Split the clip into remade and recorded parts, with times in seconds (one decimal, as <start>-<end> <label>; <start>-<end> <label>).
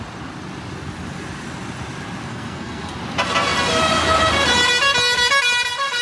0.0-2.3 recorded; 2.3-3.0 remade; 3.0-6.0 recorded